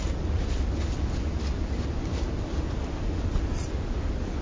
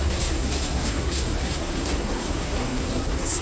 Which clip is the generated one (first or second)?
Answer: second